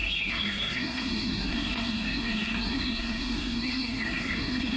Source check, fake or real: fake